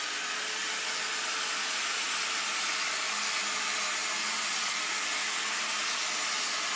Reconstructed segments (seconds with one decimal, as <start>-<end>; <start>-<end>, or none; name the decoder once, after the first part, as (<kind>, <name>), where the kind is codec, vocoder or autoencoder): 4.2-4.7 (vocoder, WaveNeXt)